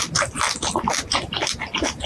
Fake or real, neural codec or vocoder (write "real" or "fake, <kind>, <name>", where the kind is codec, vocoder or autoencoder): real